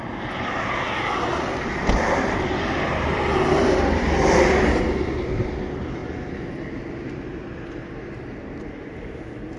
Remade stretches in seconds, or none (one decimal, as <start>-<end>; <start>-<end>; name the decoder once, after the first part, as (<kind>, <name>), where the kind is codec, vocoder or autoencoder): none